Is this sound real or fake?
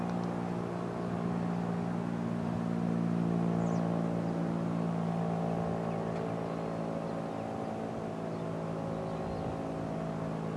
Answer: real